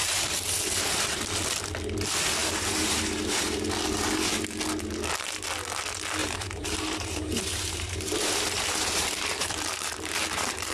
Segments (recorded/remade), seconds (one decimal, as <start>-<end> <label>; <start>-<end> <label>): 0.0-1.2 remade; 1.2-2.4 recorded; 2.4-3.4 remade; 3.4-6.2 recorded; 6.2-10.7 remade